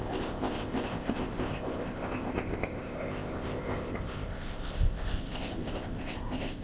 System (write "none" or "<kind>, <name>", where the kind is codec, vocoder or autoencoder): codec, ZipCodec